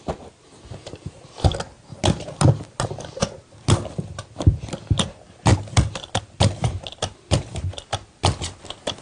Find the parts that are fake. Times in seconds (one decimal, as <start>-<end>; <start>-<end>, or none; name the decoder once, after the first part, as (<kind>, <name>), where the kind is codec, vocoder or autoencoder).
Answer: none

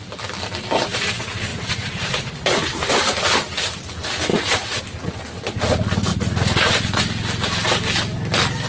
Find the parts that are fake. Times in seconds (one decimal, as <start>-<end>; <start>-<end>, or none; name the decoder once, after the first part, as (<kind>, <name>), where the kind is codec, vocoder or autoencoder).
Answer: 1.5-2.8 (vocoder, Vocos); 4.3-4.8; 6.1-7.0

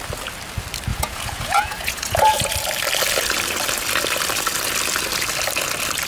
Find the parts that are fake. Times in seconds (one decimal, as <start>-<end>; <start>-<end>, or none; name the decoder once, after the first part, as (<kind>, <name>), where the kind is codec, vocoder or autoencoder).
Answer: 0.9-2.5 (vocoder, Vocos)

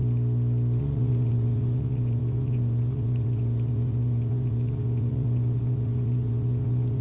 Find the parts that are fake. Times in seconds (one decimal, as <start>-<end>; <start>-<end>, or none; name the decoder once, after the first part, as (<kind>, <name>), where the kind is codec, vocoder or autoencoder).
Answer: 0.8-7.0 (vocoder, Vocos)

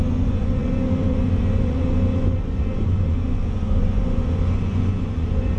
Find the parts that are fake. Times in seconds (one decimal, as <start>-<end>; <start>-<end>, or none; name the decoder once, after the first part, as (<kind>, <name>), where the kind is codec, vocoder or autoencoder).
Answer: 0.0-5.6 (vocoder, Vocos)

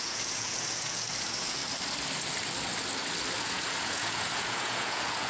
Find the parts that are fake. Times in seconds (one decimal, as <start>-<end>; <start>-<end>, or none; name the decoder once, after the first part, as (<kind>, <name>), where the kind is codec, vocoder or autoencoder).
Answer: 0.0-1.6 (vocoder, Vocos); 3.4-5.3

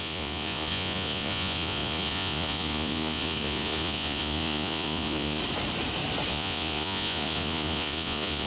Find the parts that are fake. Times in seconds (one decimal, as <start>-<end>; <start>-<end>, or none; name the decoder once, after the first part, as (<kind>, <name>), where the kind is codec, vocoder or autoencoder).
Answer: 0.0-5.4 (vocoder, Vocos); 6.3-8.5